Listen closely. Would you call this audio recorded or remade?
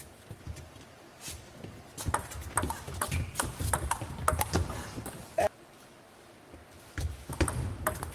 recorded